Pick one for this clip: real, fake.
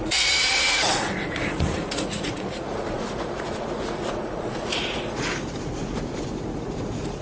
fake